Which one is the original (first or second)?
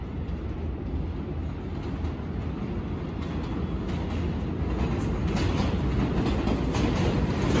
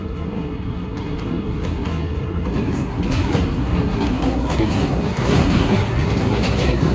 first